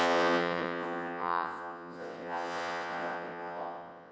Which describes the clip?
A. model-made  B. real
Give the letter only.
A